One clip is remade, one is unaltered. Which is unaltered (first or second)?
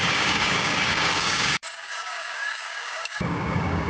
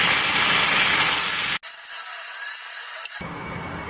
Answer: second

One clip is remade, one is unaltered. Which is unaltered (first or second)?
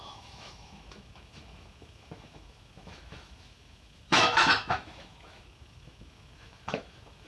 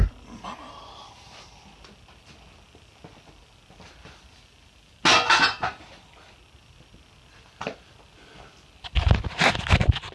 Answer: second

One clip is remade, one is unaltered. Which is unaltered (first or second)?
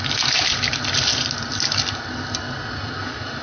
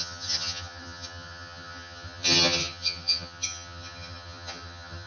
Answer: first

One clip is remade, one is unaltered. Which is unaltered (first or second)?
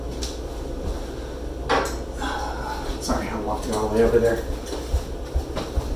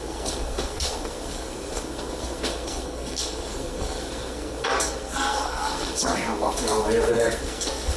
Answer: first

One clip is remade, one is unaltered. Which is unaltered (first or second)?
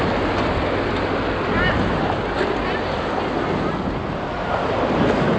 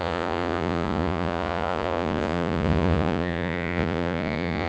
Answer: first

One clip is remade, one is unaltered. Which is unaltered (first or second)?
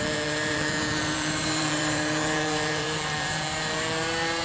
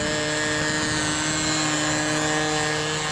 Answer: second